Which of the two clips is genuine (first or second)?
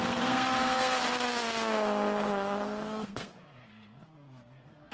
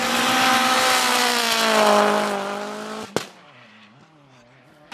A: second